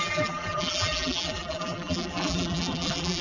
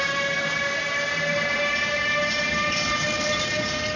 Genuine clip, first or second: second